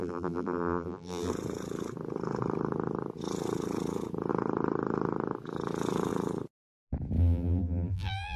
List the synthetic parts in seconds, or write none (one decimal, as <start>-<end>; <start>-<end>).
0.0-1.3; 7.2-8.4